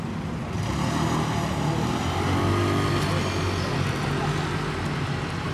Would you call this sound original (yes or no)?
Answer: yes